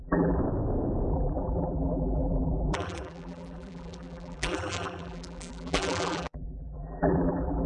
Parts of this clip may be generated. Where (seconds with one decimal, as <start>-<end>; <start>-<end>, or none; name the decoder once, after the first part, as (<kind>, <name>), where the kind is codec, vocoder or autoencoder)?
0.0-0.4 (vocoder, BigVGAN v2); 1.1-7.7

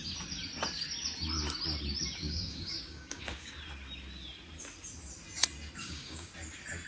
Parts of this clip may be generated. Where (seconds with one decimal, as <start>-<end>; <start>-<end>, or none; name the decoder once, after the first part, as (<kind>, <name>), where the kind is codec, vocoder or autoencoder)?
2.2-3.5 (codec, DAC); 5.8-6.3